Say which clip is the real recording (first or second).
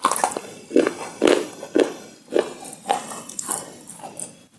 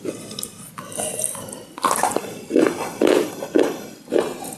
first